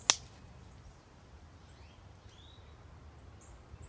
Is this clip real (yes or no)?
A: yes